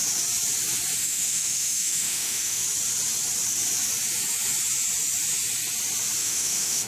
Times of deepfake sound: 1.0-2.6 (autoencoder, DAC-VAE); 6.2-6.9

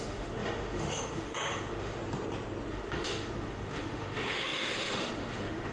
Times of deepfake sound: 0.0-2.0 (autoencoder, DAC-VAE); 2.7-5.7

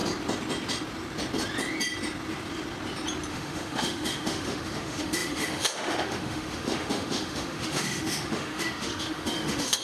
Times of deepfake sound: 3.3-9.8 (autoencoder, DAC-VAE)

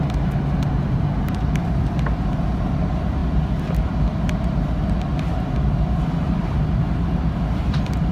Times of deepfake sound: none

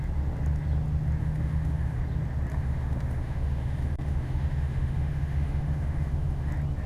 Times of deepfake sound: 1.2-2.0 (autoencoder, DAC-VAE); 2.5-6.5